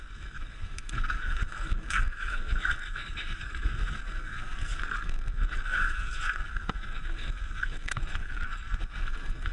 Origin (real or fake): fake